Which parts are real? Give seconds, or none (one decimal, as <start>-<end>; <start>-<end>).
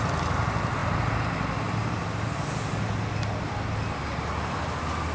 0.0-5.1